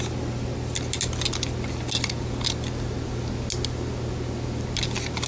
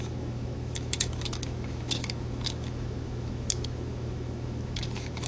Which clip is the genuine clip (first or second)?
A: first